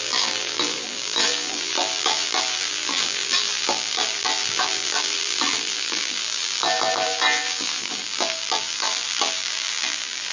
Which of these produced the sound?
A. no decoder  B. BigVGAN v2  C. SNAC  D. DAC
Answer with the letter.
B